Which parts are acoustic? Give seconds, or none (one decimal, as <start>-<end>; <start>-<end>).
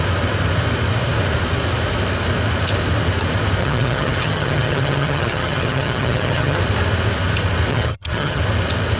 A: 0.0-3.6; 6.6-7.7; 8.4-9.0